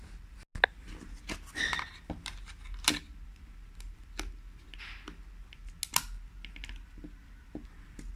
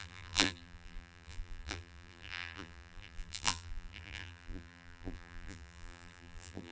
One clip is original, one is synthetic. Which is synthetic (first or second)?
second